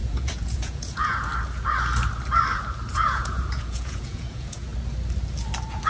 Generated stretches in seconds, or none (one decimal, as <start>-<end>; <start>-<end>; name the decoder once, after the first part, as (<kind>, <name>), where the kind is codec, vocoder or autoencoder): 0.0-1.3 (vocoder, Vocos); 2.9-4.7